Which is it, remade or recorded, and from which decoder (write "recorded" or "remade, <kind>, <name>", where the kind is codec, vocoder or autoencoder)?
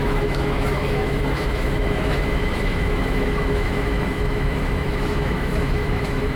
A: remade, autoencoder, DAC-VAE